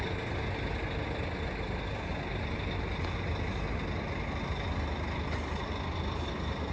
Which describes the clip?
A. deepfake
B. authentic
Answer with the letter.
B